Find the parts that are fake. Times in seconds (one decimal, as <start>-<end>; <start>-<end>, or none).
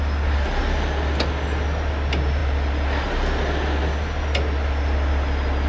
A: none